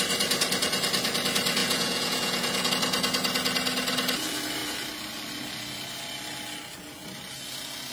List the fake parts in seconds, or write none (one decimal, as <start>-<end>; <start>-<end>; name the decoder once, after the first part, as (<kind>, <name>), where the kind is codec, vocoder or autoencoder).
1.6-2.7 (vocoder, Vocos)